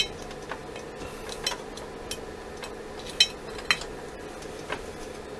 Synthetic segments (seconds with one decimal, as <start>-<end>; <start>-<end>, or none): none